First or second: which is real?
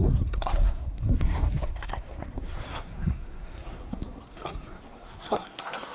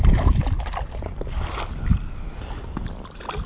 second